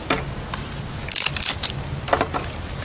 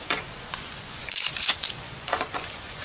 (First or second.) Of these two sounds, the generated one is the second